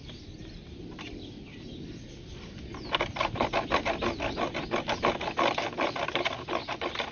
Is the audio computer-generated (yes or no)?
no